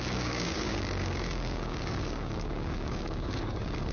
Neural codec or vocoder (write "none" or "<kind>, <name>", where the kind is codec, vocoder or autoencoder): codec, DAC